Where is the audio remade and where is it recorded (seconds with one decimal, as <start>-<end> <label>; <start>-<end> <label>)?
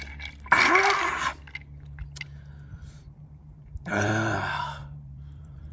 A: 0.0-2.7 recorded; 2.7-4.1 remade; 4.1-4.8 recorded; 4.8-5.7 remade